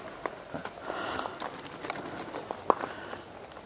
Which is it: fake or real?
real